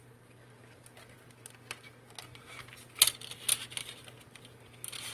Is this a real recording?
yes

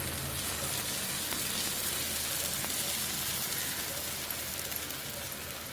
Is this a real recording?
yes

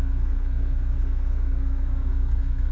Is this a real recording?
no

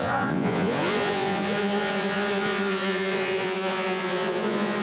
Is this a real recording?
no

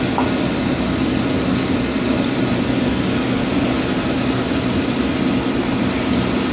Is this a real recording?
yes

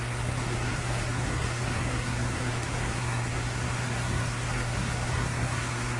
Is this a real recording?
no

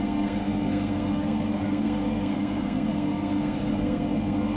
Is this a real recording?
no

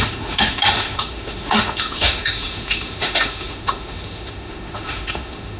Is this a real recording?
no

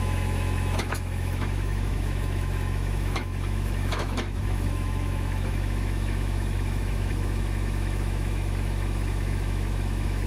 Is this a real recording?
no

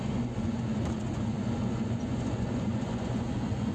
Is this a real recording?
no